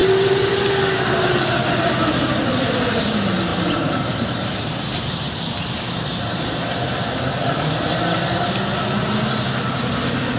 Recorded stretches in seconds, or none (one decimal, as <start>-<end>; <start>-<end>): 0.0-3.5; 7.0-10.4